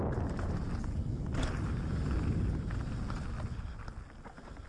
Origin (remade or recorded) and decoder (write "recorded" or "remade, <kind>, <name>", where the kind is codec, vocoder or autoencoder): recorded